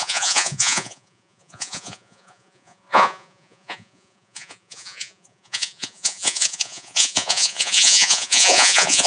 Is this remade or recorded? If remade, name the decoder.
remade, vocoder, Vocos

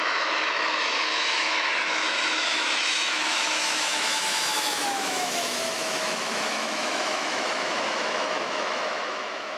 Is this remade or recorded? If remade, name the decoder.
remade, autoencoder, DAC-VAE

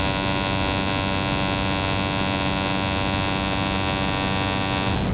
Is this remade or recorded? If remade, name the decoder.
recorded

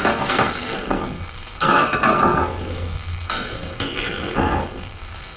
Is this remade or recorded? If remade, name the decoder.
remade, codec, SNAC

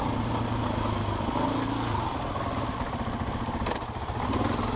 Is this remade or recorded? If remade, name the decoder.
recorded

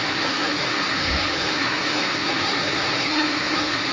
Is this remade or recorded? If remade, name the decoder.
remade, codec, SNAC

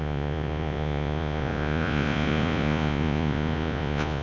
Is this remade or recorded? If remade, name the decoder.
remade, vocoder, Vocos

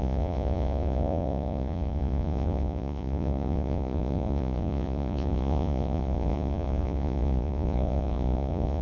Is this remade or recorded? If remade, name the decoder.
remade, vocoder, Vocos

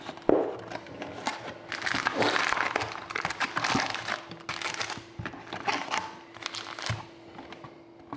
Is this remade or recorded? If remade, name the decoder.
recorded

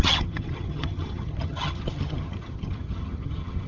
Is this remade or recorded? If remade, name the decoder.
remade, vocoder, HiFi-GAN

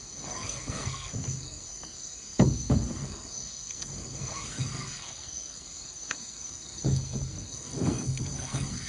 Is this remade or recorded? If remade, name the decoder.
remade, codec, SNAC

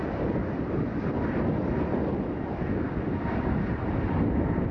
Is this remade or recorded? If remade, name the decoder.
recorded